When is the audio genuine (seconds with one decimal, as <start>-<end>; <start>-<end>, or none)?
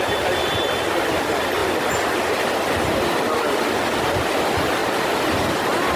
0.0-6.0